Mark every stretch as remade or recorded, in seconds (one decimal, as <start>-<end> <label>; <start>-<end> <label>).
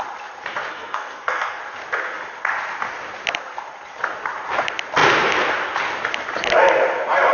0.0-0.7 recorded; 0.7-1.6 remade; 1.6-7.3 recorded